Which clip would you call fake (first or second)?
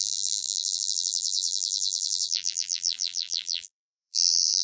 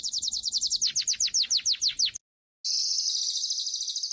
first